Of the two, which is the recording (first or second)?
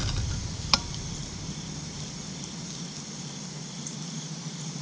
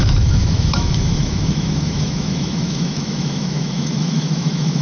first